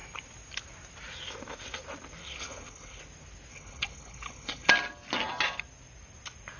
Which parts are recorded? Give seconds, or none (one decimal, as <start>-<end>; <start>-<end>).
0.0-2.2; 3.0-3.5; 4.7-6.6